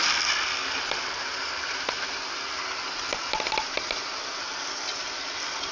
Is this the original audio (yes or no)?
yes